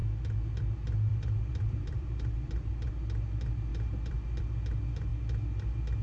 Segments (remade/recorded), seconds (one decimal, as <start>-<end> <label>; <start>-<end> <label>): 0.0-1.1 recorded; 1.1-2.9 remade; 2.9-3.7 recorded; 3.7-4.4 remade; 4.4-6.0 recorded